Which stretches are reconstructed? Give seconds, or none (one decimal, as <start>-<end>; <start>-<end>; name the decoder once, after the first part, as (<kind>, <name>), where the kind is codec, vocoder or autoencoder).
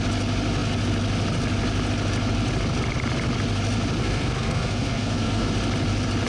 4.0-5.5 (codec, SNAC)